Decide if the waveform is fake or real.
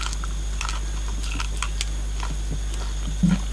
real